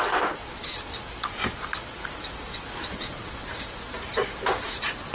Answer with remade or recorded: recorded